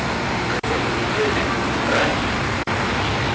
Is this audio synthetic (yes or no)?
no